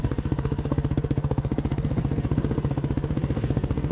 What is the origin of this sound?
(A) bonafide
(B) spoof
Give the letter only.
B